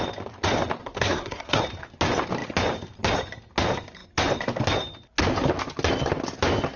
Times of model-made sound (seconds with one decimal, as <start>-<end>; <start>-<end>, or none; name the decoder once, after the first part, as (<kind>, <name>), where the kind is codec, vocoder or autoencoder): 0.8-1.6 (codec, SNAC)

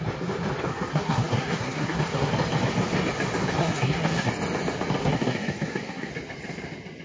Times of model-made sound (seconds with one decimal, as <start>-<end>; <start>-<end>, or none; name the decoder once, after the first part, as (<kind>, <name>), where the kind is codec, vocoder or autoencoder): 0.7-2.3 (codec, SNAC); 3.6-4.3; 5.0-6.1